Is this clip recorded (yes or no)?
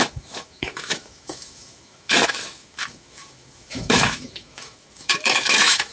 no